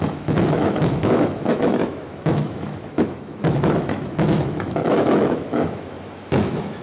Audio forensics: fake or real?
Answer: fake